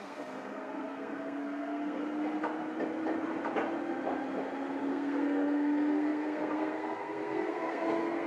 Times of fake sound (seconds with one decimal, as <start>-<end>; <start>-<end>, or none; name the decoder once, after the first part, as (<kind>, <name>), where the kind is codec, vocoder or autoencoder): 0.0-2.0 (codec, SNAC); 4.9-8.3